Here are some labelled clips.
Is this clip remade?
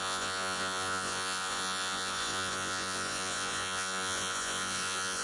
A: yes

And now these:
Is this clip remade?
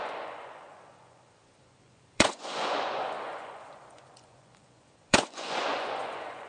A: yes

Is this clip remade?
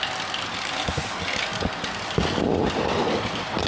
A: no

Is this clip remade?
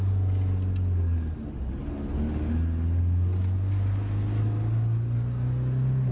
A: no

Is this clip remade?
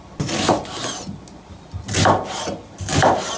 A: no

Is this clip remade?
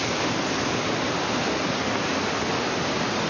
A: no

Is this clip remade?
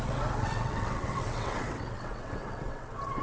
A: yes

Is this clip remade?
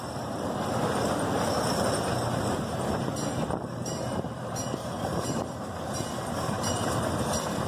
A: yes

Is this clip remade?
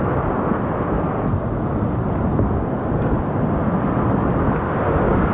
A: no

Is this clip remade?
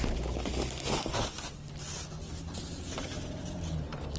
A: no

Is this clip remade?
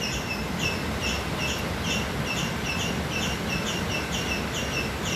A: no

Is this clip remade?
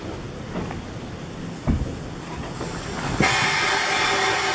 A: no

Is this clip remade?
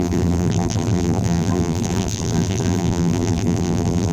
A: yes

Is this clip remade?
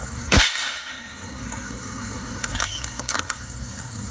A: yes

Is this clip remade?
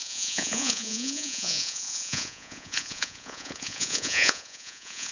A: yes